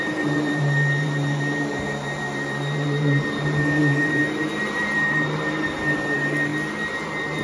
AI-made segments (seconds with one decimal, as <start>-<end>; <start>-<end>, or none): 0.0-6.5; 7.0-7.4

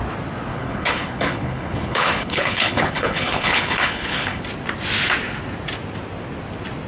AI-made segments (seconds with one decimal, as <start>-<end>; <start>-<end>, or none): 0.5-4.4

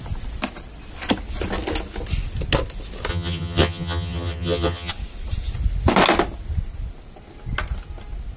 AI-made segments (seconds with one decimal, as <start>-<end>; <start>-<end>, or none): 3.1-4.9

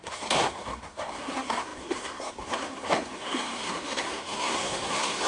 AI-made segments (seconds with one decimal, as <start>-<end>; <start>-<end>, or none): 0.0-5.3